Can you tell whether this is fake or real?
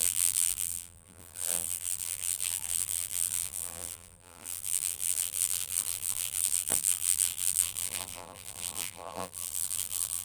fake